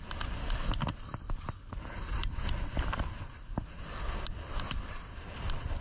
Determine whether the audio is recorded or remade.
recorded